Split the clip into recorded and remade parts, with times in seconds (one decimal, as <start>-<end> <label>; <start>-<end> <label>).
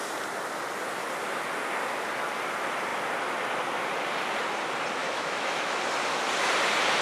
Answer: 0.0-5.0 recorded; 5.0-5.8 remade; 5.8-7.0 recorded